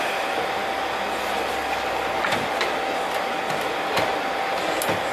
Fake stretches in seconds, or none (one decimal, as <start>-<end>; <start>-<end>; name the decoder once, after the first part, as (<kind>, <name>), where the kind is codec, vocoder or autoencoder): none